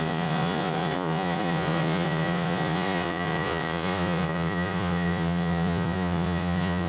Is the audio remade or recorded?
remade